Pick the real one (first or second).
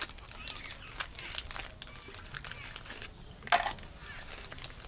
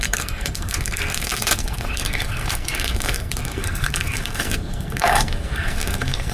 first